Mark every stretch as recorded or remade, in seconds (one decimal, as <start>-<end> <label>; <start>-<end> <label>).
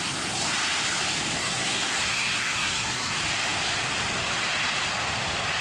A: 0.0-1.4 recorded; 1.4-3.1 remade; 3.1-5.6 recorded